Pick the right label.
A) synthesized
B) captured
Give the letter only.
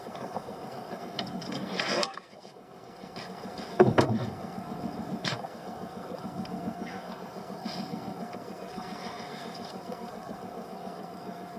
A